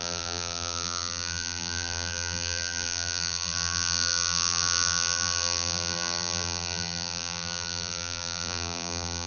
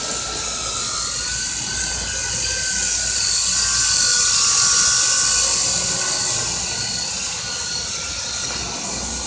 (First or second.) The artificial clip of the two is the first